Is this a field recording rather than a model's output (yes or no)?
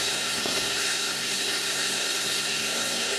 no